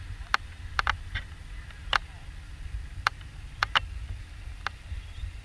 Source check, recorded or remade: recorded